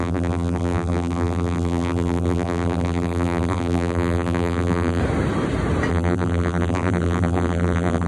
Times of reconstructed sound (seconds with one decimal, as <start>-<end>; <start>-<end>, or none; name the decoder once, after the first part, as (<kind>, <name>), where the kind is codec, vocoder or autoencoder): 0.0-5.0 (vocoder, BigVGAN v2); 5.9-8.1